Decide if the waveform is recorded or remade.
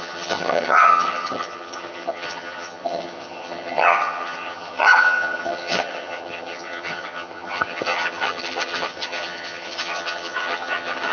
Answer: remade